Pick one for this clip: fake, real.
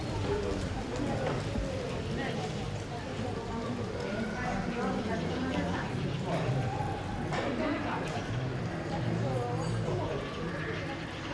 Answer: real